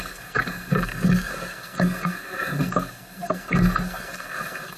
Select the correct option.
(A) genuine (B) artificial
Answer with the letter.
B